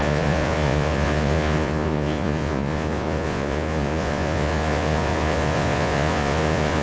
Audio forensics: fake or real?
fake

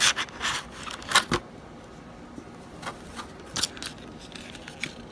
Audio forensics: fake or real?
real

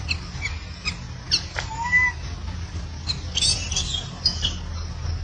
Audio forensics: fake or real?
real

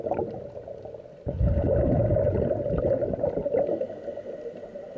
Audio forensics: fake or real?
real